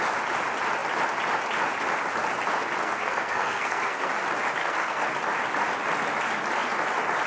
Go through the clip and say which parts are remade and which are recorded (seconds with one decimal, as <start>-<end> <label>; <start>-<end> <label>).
0.0-2.8 recorded; 2.8-4.1 remade; 4.1-4.6 recorded; 4.6-5.1 remade; 5.1-7.3 recorded